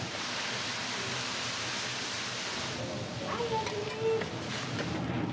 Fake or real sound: real